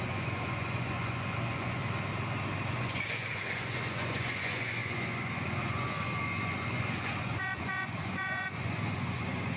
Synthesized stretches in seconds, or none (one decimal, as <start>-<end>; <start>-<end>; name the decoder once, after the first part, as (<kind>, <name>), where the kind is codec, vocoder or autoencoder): 0.0-1.8 (vocoder, Vocos); 2.7-9.6